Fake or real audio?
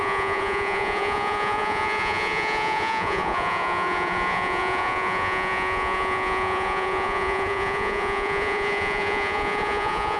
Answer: fake